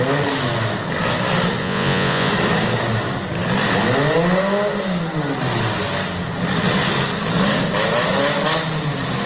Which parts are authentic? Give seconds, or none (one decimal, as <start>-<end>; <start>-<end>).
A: 0.0-1.6; 2.3-9.3